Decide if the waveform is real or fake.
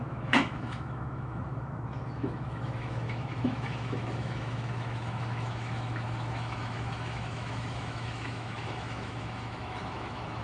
fake